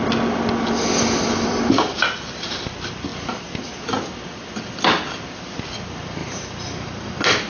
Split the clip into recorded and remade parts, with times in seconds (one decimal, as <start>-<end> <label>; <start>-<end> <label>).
0.0-1.3 recorded; 1.3-2.7 remade; 2.7-6.2 recorded; 6.2-7.1 remade; 7.1-7.5 recorded